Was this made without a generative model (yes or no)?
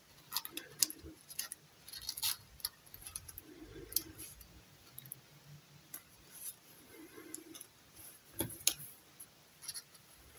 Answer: yes